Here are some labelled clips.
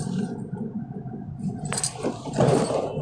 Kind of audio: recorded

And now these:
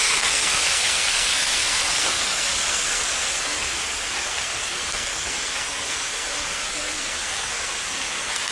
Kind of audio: remade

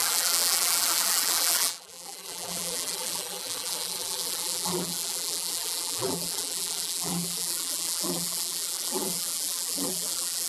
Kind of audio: remade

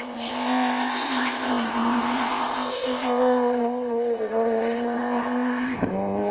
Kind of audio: remade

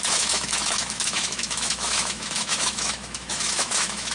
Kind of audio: remade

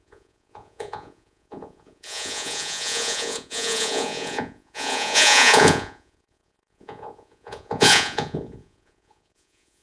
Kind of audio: remade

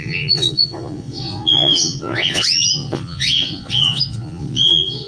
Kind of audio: remade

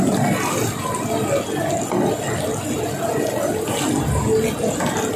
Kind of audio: recorded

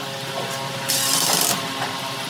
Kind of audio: recorded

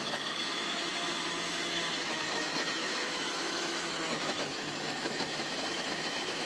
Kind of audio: remade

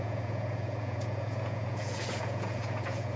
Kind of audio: remade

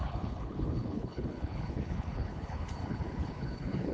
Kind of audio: remade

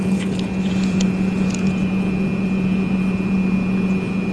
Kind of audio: remade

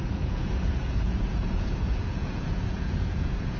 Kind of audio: remade